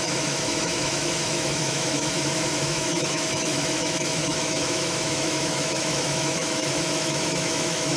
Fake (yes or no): yes